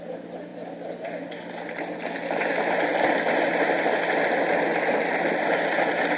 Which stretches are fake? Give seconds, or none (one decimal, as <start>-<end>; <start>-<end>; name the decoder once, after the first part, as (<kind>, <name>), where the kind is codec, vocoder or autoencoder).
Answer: none